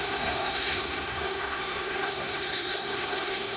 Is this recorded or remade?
remade